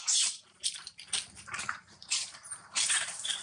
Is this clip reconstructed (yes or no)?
yes